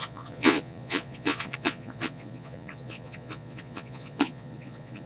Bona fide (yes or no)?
no